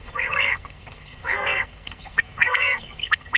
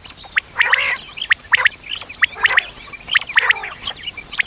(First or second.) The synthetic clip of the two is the first